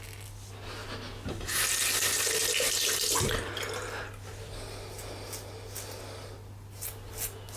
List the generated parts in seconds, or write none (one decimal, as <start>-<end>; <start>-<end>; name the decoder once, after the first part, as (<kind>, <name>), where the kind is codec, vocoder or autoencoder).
none